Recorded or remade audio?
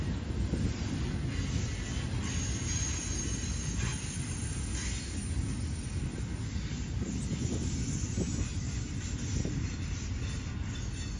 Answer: recorded